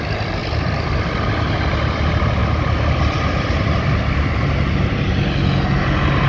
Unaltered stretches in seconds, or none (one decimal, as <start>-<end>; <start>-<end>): 0.0-0.4; 1.1-2.4; 4.4-6.3